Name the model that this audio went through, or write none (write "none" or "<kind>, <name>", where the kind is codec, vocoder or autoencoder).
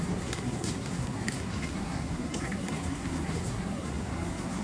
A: codec, SNAC